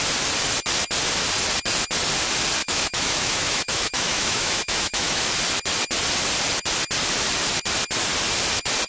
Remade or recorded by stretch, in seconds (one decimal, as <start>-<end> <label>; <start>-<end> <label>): 0.0-2.6 recorded; 2.6-5.2 remade; 5.2-8.9 recorded